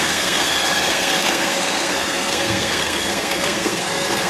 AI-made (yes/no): yes